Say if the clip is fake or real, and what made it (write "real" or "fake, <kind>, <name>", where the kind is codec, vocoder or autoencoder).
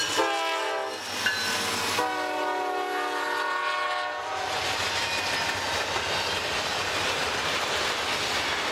real